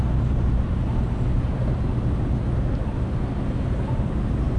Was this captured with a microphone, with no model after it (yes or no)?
yes